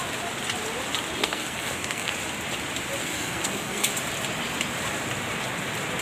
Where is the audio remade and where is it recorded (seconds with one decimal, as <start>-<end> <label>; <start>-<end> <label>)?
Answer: 0.0-1.2 recorded; 1.2-2.1 remade; 2.1-3.0 recorded; 3.0-3.9 remade; 3.9-6.0 recorded